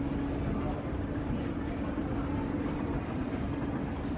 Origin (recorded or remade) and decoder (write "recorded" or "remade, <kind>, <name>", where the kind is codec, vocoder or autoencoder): remade, vocoder, BigVGAN v2